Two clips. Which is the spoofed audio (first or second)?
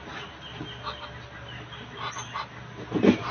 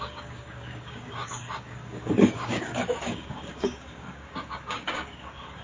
second